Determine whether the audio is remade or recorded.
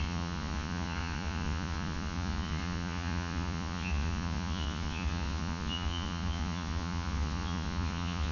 remade